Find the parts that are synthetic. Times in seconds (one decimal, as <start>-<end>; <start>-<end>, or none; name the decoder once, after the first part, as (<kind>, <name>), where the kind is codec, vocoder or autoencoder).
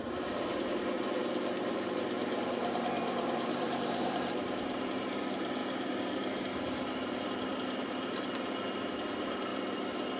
0.0-9.5 (vocoder, BigVGAN v2)